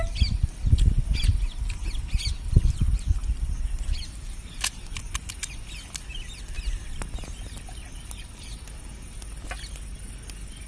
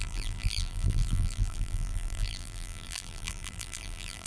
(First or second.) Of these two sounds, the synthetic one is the second